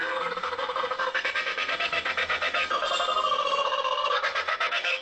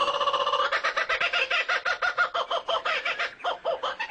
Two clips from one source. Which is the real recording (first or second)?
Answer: second